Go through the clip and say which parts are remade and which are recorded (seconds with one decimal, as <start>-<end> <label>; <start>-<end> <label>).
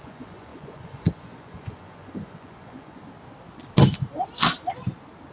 0.0-3.0 remade; 3.0-5.3 recorded